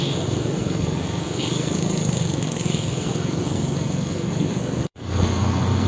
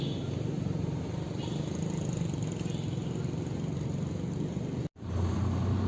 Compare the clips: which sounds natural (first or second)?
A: second